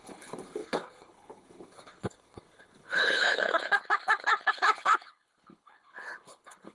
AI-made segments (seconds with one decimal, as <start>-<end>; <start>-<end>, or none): 0.0-6.7